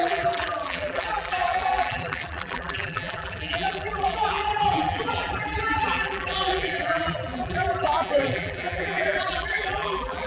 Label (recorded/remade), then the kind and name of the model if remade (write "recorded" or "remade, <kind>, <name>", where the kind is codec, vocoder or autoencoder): remade, vocoder, BigVGAN v2